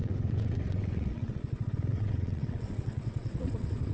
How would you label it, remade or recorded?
remade